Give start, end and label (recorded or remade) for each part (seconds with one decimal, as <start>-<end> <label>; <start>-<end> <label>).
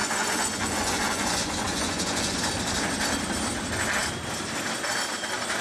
0.0-2.4 remade; 2.4-5.6 recorded